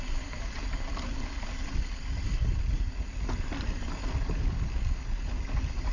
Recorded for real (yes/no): yes